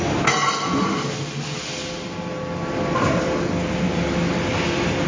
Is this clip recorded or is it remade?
recorded